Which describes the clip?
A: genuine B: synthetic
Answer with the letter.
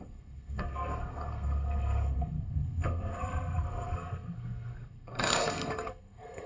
B